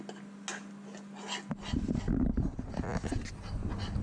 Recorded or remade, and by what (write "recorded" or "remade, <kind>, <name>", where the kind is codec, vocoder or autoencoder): recorded